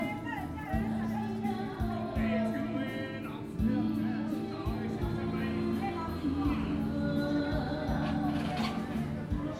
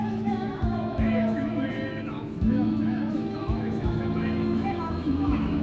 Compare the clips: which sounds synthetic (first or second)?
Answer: second